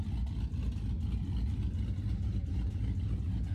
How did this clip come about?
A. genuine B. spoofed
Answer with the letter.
A